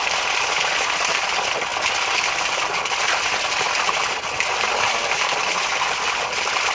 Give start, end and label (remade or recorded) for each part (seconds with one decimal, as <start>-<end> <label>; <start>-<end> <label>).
0.0-6.7 recorded